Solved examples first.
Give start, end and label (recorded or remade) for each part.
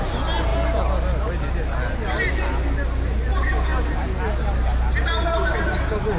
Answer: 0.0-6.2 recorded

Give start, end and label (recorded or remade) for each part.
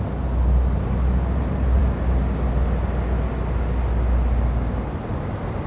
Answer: 0.0-5.7 recorded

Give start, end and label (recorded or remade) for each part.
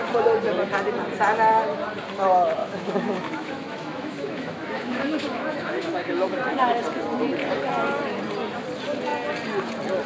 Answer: 0.0-2.6 recorded; 2.6-6.8 remade; 6.8-10.1 recorded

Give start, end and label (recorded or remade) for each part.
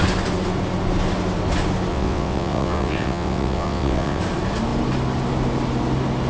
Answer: 0.0-1.9 recorded; 1.9-4.2 remade; 4.2-6.3 recorded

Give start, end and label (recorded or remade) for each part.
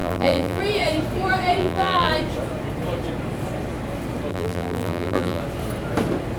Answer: 0.0-0.6 remade; 0.6-1.6 recorded; 1.6-2.1 remade; 2.1-4.3 recorded; 4.3-5.4 remade; 5.4-6.4 recorded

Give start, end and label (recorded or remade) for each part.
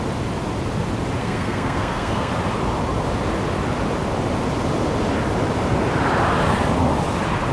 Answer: 0.0-1.2 recorded; 1.2-2.3 remade; 2.3-7.5 recorded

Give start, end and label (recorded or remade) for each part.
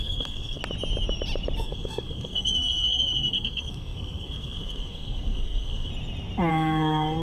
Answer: 0.0-0.6 remade; 0.6-1.6 recorded; 1.6-5.9 remade; 5.9-6.5 recorded; 6.5-7.2 remade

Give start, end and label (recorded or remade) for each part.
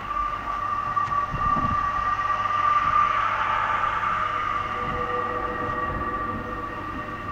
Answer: 0.0-0.6 remade; 0.6-7.3 recorded